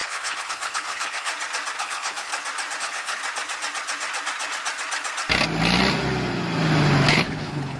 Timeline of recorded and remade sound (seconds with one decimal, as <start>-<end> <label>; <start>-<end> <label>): 0.0-1.3 remade; 1.3-1.8 recorded; 1.8-2.3 remade; 2.3-2.8 recorded; 2.8-3.2 remade; 3.2-7.1 recorded; 7.1-7.8 remade